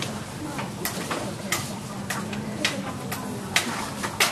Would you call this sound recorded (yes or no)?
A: yes